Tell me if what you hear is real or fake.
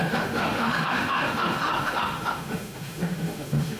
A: fake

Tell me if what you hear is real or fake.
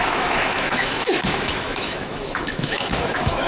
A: fake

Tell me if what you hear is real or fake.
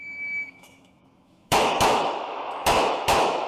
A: fake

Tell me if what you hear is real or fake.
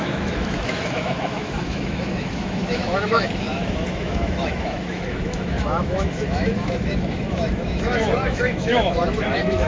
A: fake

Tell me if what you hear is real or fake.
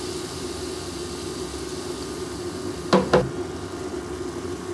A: real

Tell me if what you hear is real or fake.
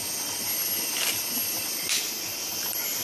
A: real